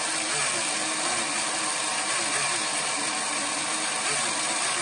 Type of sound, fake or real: real